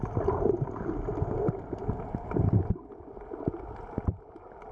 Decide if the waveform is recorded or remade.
recorded